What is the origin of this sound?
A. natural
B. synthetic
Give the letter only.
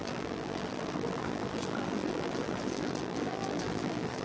B